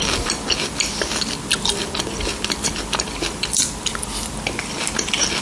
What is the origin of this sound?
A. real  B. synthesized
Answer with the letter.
A